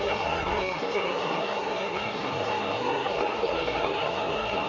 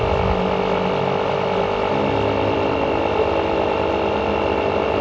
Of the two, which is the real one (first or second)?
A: second